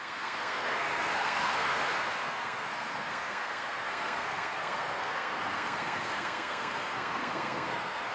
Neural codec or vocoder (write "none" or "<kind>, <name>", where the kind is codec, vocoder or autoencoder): codec, SNAC